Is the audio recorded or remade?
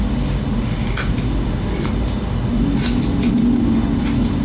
recorded